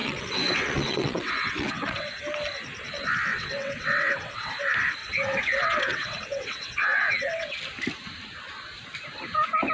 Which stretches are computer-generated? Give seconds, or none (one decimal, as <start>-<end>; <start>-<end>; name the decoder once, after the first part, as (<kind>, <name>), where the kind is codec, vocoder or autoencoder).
0.0-2.2 (vocoder, WaveNeXt); 3.3-4.5; 5.0-7.6